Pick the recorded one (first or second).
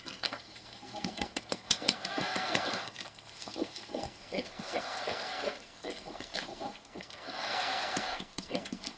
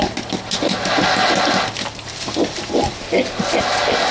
second